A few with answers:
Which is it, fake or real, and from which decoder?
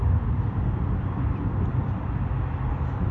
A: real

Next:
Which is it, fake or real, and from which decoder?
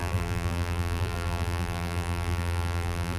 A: fake, vocoder, BigVGAN v2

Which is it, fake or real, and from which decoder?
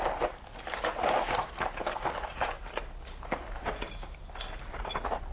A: real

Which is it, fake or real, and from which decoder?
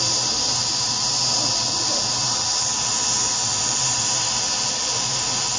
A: fake, vocoder, BigVGAN v2